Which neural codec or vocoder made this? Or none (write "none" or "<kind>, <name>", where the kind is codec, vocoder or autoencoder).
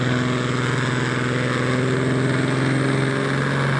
none